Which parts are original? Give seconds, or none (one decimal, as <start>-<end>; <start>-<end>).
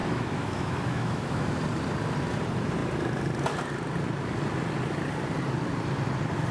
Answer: 1.6-6.5